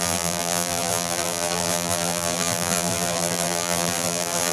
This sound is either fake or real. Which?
fake